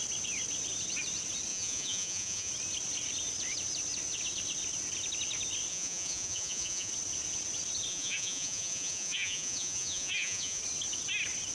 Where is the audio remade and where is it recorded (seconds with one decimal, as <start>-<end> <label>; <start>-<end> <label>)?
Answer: 0.0-1.5 recorded; 1.5-2.5 remade; 2.5-5.7 recorded; 5.7-6.9 remade; 6.9-7.9 recorded; 7.9-10.6 remade; 10.6-11.5 recorded